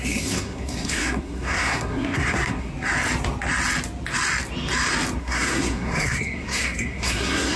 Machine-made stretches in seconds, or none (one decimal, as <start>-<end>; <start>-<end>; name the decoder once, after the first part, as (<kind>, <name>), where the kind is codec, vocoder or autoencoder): 0.0-2.7 (codec, SNAC); 5.2-7.6